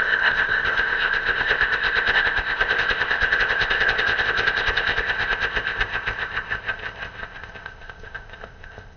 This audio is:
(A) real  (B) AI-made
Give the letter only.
B